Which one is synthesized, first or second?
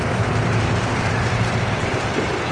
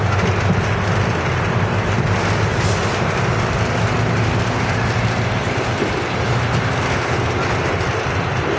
first